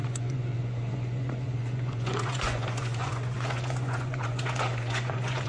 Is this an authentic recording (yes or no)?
no